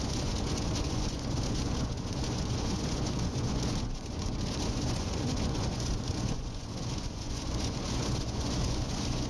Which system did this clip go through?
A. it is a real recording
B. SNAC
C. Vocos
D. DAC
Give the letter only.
C